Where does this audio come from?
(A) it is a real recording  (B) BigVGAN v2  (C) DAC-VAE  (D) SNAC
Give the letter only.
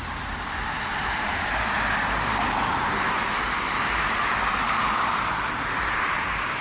B